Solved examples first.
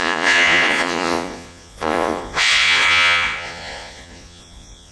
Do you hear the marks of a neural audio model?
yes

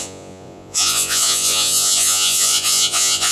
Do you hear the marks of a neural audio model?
yes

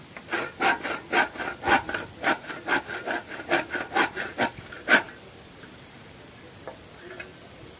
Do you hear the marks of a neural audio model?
no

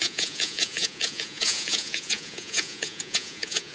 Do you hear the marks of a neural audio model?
yes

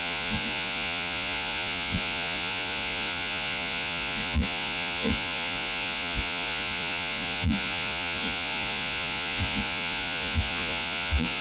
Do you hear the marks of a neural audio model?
yes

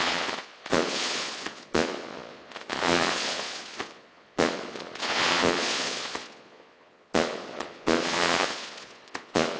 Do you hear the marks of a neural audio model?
yes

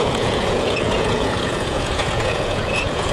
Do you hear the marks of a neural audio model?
yes